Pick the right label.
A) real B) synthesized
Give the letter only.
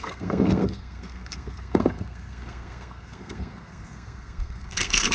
B